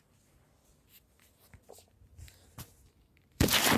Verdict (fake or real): fake